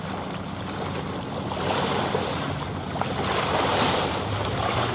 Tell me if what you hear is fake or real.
real